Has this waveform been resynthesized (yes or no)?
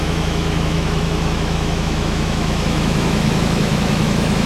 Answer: yes